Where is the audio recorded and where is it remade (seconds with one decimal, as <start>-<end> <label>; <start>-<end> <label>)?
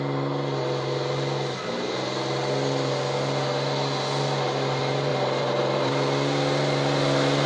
0.0-5.1 recorded; 5.1-5.9 remade; 5.9-7.5 recorded